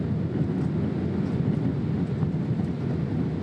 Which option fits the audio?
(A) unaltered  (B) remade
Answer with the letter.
A